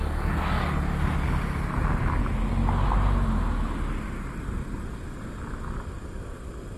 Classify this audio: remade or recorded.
recorded